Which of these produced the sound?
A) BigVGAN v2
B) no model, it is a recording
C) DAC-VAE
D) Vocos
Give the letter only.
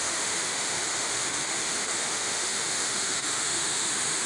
C